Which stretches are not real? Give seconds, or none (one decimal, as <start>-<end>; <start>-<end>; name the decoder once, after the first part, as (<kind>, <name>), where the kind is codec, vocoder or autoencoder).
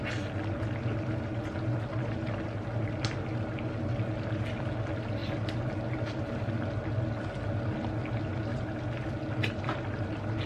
none